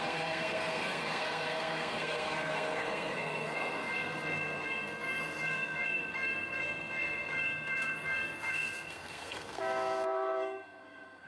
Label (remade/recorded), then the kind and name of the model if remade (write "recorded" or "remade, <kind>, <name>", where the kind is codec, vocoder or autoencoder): remade, codec, SNAC